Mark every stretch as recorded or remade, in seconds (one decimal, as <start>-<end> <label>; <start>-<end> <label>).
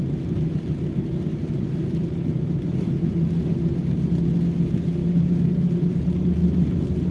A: 0.0-1.3 recorded; 1.3-3.1 remade; 3.1-5.0 recorded; 5.0-6.0 remade; 6.0-7.1 recorded